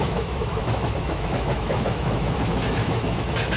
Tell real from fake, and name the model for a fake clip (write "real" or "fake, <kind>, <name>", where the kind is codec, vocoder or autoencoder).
fake, autoencoder, DAC-VAE